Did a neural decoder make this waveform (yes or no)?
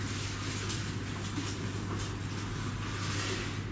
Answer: no